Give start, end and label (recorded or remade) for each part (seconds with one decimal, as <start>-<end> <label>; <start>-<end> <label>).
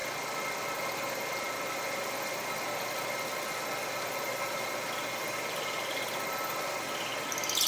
0.0-7.7 recorded